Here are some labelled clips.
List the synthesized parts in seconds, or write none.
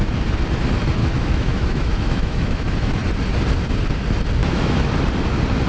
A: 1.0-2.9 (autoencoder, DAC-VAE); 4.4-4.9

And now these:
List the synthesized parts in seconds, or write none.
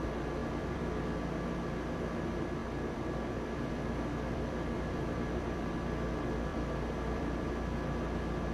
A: 0.4-1.2 (vocoder, BigVGAN v2); 2.6-5.7; 6.5-7.5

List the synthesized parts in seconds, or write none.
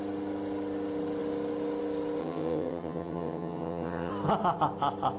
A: 2.2-4.1 (vocoder, HiFi-GAN)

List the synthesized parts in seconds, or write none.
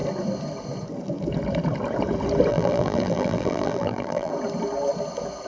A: 2.5-4.3 (vocoder, BigVGAN v2)